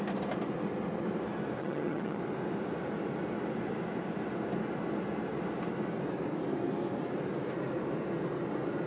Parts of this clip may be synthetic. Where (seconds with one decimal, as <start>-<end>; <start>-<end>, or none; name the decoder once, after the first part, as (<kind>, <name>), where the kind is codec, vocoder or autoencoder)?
1.6-2.2 (vocoder, HiFi-GAN)